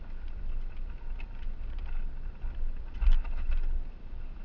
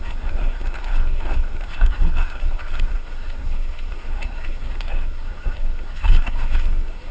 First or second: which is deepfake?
second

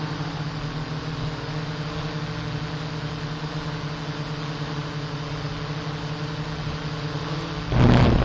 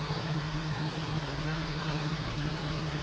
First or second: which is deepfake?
second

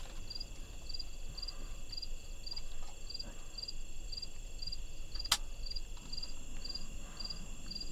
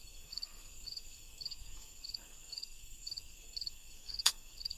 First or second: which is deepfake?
second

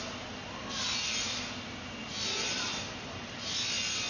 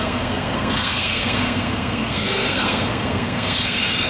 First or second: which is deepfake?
second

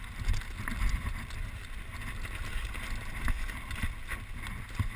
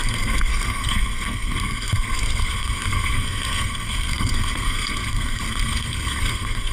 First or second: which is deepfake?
second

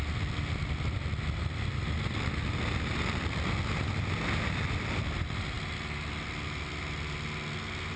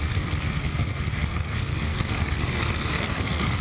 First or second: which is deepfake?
second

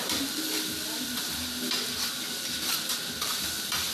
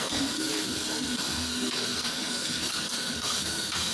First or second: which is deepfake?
second